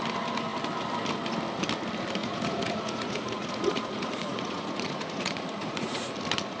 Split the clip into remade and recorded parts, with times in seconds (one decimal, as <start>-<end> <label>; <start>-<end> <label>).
0.0-2.2 recorded; 2.2-6.1 remade; 6.1-6.6 recorded